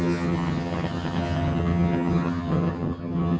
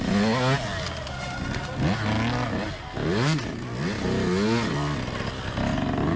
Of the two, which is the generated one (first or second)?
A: first